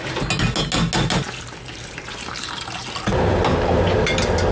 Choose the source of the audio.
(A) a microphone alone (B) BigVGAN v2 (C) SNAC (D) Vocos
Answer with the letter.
A